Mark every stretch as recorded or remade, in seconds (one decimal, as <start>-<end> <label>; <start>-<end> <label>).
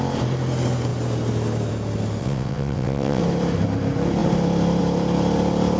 0.0-2.2 recorded; 2.2-3.2 remade; 3.2-5.8 recorded